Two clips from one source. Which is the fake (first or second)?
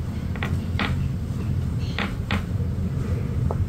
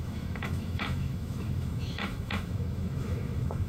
second